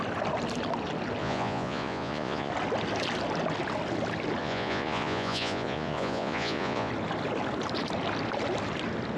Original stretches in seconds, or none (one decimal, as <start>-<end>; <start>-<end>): 0.0-1.2; 2.5-4.4; 6.9-9.2